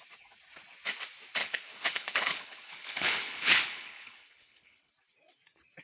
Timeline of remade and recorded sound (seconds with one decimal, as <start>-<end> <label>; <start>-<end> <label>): 0.0-1.4 recorded; 1.4-4.9 remade; 4.9-5.8 recorded